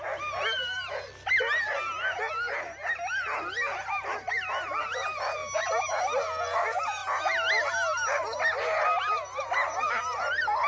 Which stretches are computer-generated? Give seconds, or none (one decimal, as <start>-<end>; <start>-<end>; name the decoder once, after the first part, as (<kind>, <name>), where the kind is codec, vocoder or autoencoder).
none